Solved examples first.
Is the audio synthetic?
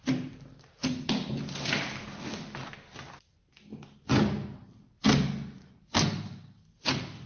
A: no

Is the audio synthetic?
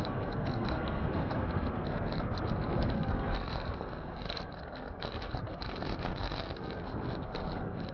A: yes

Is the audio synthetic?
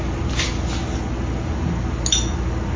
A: no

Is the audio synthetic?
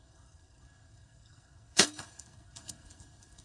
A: yes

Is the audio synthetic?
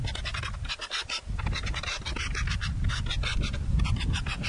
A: no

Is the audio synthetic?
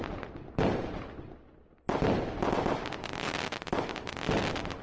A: no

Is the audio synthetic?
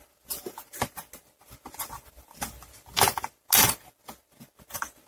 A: no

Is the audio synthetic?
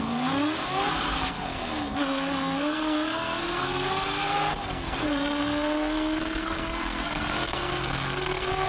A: yes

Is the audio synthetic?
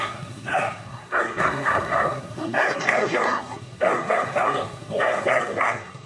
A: yes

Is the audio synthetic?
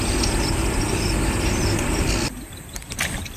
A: no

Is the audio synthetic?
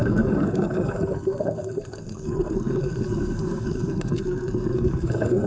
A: yes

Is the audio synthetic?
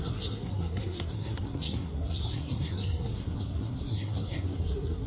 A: yes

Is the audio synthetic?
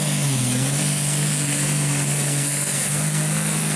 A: yes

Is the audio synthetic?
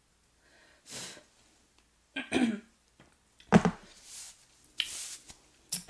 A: no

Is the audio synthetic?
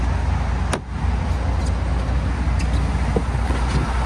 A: no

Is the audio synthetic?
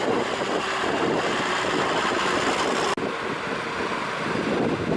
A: no